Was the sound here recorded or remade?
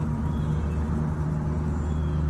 recorded